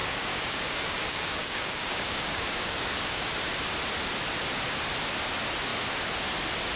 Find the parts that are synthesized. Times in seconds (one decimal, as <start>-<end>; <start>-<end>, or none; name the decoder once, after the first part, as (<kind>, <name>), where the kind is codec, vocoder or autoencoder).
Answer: 0.0-3.3 (codec, DAC)